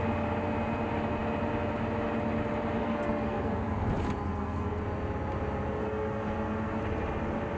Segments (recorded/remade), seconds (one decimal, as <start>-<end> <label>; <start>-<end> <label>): 0.0-2.8 recorded; 2.8-3.7 remade; 3.7-4.3 recorded; 4.3-4.8 remade; 4.8-5.8 recorded; 5.8-6.8 remade; 6.8-7.6 recorded